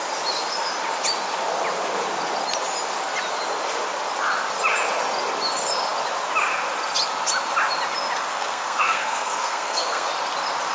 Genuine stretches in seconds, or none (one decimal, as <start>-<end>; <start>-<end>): 0.0-8.3; 10.1-10.7